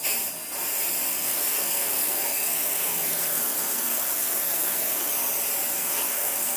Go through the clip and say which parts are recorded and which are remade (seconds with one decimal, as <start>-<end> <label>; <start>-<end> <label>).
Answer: 0.0-1.1 recorded; 1.1-5.1 remade; 5.1-5.7 recorded; 5.7-6.6 remade